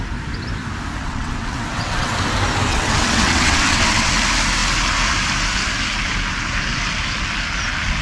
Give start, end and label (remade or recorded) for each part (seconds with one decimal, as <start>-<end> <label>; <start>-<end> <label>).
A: 0.0-1.0 recorded; 1.0-2.1 remade; 2.1-2.7 recorded; 2.7-4.1 remade; 4.1-8.0 recorded